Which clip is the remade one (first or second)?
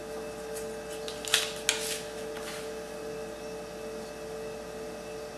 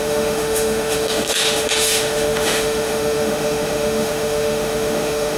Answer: second